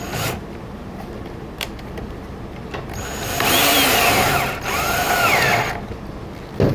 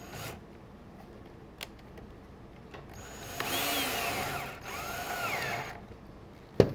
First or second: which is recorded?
second